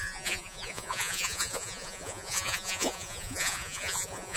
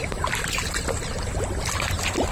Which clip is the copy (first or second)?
first